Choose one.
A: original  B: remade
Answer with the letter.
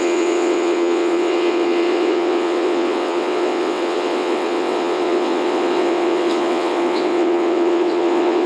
B